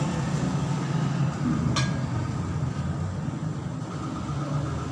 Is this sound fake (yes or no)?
no